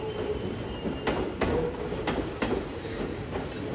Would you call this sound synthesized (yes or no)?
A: no